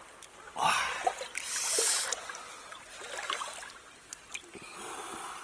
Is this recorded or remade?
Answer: recorded